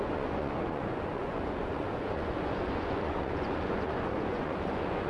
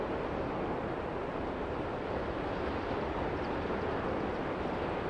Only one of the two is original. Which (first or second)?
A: second